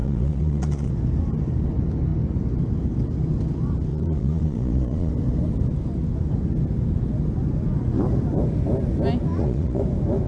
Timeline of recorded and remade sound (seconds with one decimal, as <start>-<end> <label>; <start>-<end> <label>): 0.0-0.9 remade; 0.9-3.9 recorded; 3.9-5.1 remade; 5.1-9.3 recorded; 9.3-9.8 remade; 9.8-10.3 recorded